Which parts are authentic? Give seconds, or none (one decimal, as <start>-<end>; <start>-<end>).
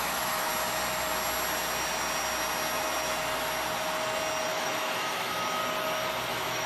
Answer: 0.5-4.5; 5.6-6.3